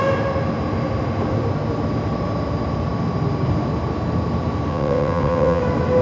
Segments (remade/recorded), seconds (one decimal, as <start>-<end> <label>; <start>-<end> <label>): 0.0-4.7 recorded; 4.7-5.6 remade; 5.6-6.0 recorded